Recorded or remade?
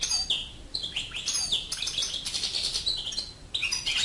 recorded